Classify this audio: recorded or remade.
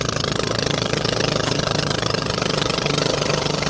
remade